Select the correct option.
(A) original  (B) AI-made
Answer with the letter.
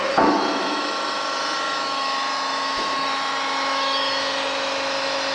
B